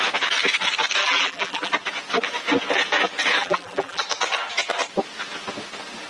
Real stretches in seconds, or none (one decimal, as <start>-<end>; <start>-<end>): 0.0-1.0; 1.7-3.4; 4.0-6.1

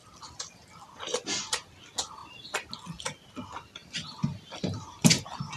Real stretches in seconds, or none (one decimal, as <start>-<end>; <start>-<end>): 1.7-2.2; 2.7-3.8; 5.0-5.6

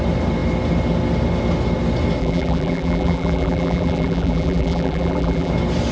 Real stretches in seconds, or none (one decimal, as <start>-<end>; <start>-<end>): 0.0-2.2; 5.5-5.9